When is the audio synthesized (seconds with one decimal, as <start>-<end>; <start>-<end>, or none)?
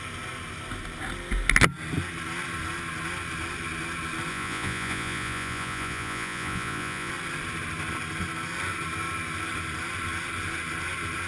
4.3-7.1